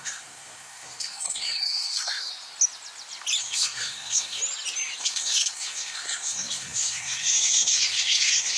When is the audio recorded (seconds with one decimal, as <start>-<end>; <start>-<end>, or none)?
2.3-3.4; 4.4-5.0